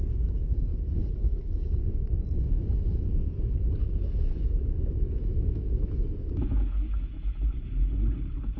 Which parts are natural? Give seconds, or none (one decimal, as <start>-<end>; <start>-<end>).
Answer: 0.0-0.7; 1.8-3.8; 7.1-8.6